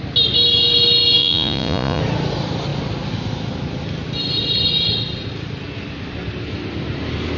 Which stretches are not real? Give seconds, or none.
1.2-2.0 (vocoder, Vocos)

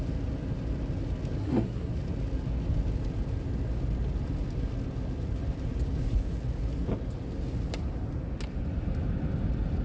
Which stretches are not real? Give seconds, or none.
1.4-1.9 (codec, SNAC)

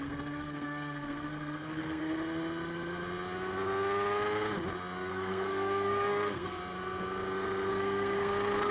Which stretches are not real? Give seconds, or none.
0.0-2.0 (codec, SNAC); 5.1-6.6; 7.7-8.7

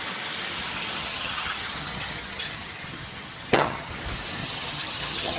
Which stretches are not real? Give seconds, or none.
1.0-3.9 (vocoder, HiFi-GAN); 4.4-5.4

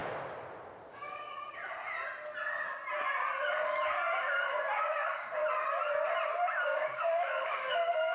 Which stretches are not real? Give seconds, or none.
0.9-1.6 (codec, DAC); 4.8-5.4; 6.6-8.1